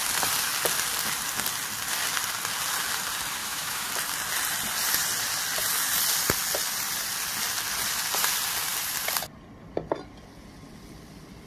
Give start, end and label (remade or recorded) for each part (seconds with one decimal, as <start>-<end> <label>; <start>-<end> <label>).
0.0-3.4 recorded; 3.4-3.9 remade; 3.9-11.5 recorded